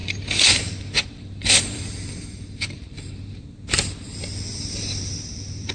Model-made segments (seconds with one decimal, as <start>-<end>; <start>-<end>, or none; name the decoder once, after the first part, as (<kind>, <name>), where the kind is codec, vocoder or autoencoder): 0.0-3.4 (vocoder, BigVGAN v2); 4.5-5.7